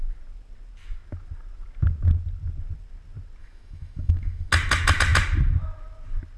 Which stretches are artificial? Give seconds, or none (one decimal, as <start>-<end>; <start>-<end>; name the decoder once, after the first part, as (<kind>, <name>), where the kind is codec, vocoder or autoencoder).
3.4-4.5 (autoencoder, DAC-VAE)